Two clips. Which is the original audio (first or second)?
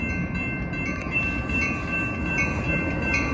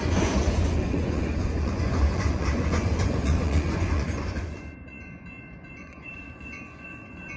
first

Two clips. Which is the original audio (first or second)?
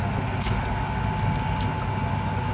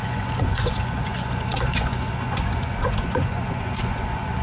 first